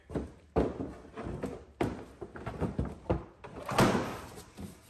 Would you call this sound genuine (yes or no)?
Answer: yes